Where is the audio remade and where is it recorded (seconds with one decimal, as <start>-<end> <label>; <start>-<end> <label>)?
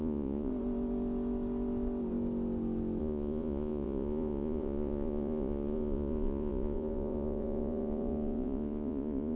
0.0-0.5 remade; 0.5-3.0 recorded; 3.0-9.4 remade